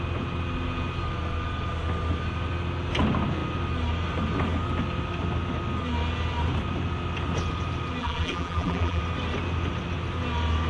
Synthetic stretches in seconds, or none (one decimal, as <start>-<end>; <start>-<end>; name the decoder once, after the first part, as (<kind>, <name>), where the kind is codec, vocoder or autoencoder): 8.0-9.0 (vocoder, BigVGAN v2)